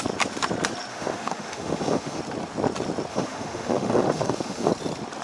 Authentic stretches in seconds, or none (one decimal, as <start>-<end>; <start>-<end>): 0.0-0.9; 2.2-3.1; 4.7-5.2